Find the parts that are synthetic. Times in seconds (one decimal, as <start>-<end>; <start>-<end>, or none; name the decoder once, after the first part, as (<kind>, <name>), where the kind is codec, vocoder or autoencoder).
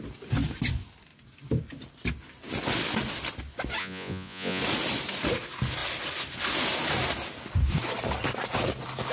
3.8-4.6 (vocoder, Vocos)